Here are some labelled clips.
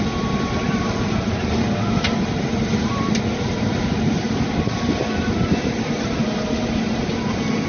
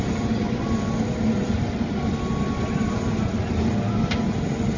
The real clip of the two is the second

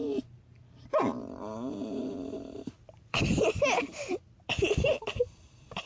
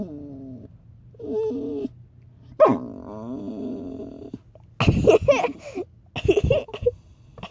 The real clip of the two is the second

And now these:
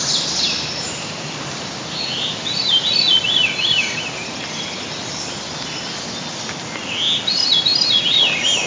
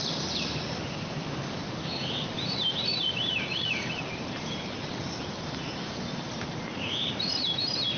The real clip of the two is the first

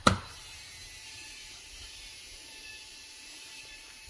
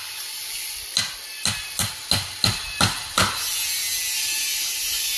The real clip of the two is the second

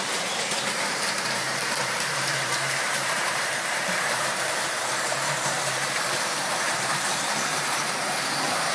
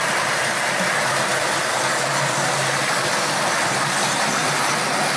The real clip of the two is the second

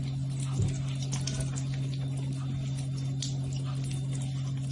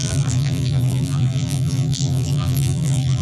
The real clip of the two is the first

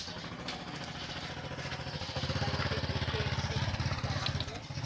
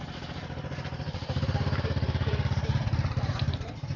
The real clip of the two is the first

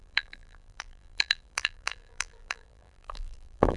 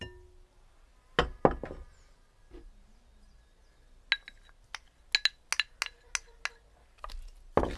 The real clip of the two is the second